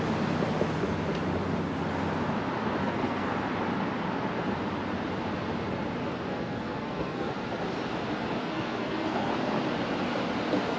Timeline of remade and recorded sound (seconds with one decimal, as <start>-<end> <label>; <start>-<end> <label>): 0.0-2.8 recorded; 2.8-3.3 remade; 3.3-6.3 recorded; 6.3-7.3 remade; 7.3-8.4 recorded; 8.4-9.3 remade; 9.3-10.8 recorded